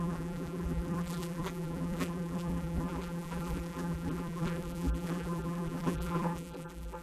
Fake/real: fake